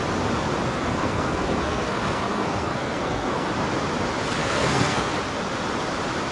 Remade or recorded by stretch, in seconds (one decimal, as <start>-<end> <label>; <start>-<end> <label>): 0.0-0.7 recorded; 0.7-3.5 remade; 3.5-4.4 recorded; 4.4-5.1 remade; 5.1-6.3 recorded